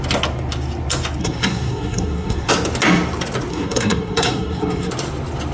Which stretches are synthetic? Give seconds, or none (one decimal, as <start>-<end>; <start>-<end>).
1.2-2.5; 3.5-4.9